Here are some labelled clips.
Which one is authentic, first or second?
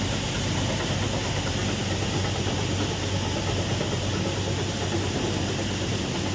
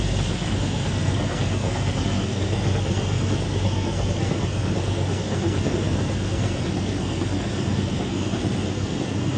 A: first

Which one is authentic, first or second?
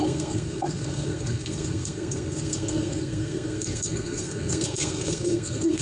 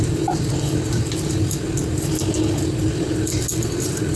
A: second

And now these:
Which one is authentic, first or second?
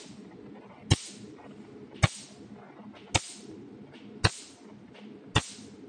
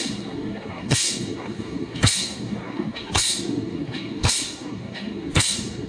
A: first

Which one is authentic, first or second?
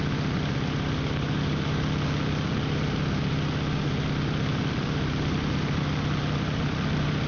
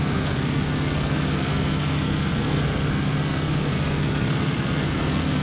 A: first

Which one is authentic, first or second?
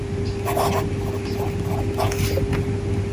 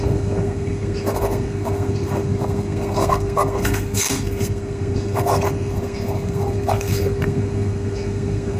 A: first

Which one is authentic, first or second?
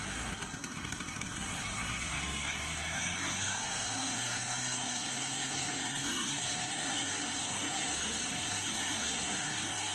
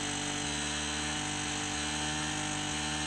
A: second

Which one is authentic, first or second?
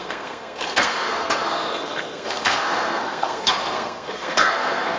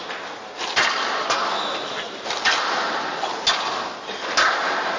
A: second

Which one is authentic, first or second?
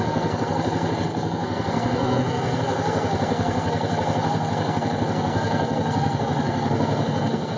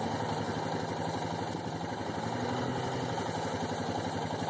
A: second